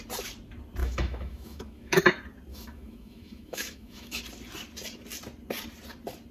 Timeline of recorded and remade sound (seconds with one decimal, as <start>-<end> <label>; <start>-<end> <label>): 0.0-0.8 recorded; 0.8-2.0 remade; 2.0-2.5 recorded; 2.5-4.2 remade; 4.2-6.3 recorded